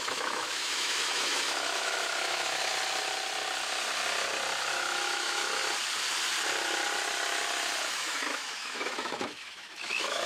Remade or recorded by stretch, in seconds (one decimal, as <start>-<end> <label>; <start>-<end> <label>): 0.0-2.7 remade; 2.7-4.7 recorded; 4.7-5.6 remade; 5.6-7.9 recorded; 7.9-10.3 remade